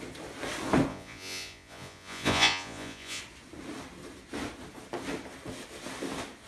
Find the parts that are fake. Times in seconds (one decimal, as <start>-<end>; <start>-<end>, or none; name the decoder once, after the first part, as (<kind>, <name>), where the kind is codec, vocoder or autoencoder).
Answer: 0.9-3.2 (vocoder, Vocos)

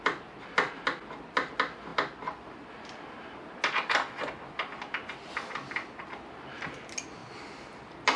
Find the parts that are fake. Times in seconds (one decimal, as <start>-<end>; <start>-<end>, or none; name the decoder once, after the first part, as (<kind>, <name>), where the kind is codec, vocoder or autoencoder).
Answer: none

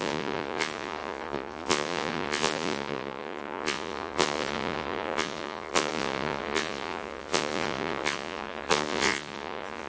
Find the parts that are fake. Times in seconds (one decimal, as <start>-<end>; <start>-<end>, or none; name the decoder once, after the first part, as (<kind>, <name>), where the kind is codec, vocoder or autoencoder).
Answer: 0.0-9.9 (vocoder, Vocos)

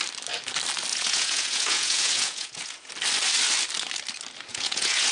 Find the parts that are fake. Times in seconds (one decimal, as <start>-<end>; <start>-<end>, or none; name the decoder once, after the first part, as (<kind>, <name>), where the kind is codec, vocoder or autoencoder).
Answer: 0.9-2.9 (vocoder, Vocos); 4.5-5.1

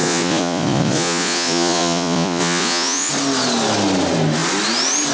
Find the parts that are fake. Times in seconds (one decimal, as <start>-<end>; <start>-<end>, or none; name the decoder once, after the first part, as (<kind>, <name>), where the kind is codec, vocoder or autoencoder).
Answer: 0.0-3.1 (vocoder, Vocos)

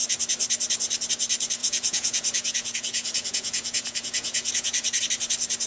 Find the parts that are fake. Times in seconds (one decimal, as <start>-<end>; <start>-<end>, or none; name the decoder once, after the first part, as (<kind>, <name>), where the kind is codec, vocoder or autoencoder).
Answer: 1.6-5.0 (vocoder, Vocos)

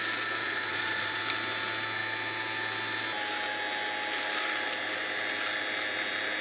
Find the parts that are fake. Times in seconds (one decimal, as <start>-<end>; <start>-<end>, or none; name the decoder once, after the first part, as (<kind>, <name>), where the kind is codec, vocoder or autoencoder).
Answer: 0.4-1.2 (vocoder, Vocos)